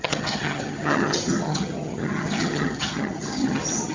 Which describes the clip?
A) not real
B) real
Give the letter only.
A